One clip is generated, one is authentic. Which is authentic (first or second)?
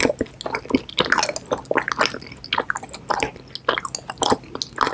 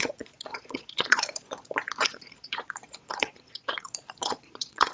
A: first